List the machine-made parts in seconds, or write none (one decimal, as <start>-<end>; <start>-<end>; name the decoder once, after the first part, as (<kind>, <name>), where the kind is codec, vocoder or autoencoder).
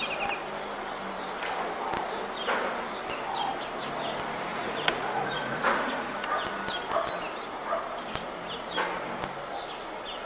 4.5-6.2 (vocoder, Vocos)